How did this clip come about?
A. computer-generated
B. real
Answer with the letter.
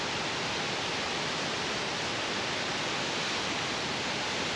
B